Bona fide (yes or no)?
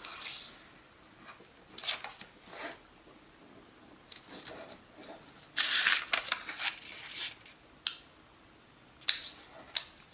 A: yes